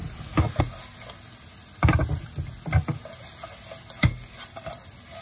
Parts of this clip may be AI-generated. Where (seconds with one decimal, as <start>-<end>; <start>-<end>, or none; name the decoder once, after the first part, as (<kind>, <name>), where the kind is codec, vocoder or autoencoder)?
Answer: none